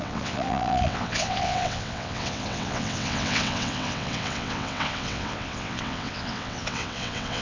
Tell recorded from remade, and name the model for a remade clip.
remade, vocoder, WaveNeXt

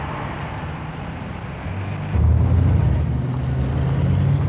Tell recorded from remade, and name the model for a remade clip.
recorded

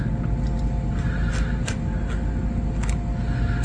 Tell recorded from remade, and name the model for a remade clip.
recorded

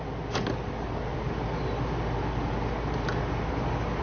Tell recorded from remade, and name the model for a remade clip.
recorded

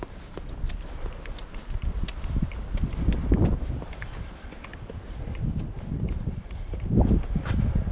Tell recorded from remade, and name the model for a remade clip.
recorded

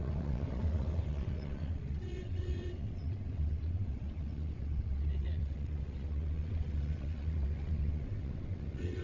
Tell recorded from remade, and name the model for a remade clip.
remade, vocoder, WaveNeXt